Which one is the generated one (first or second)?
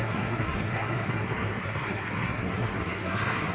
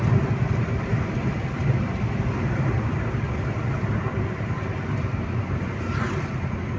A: first